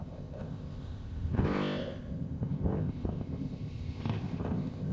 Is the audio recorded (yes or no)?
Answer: no